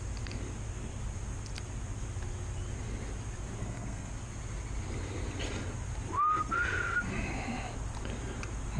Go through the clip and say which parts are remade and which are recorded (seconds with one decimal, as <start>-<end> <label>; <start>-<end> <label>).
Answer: 0.0-3.6 recorded; 3.6-4.1 remade; 4.1-8.8 recorded